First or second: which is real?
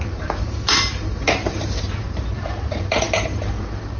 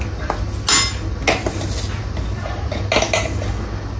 second